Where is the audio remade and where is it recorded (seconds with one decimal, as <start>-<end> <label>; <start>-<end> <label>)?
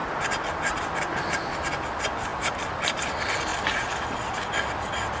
0.0-5.2 recorded